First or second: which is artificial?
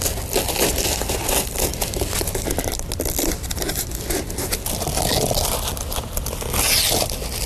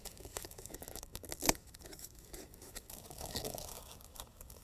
second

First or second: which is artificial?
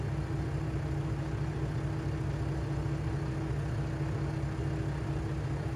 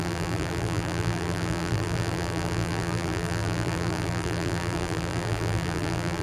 second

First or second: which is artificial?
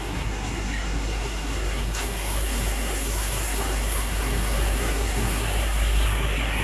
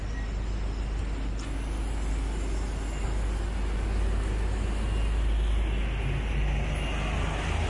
first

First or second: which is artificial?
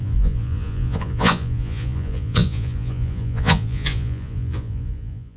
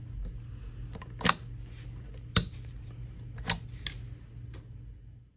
first